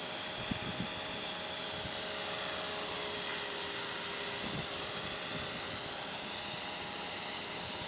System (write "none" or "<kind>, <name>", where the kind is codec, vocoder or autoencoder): none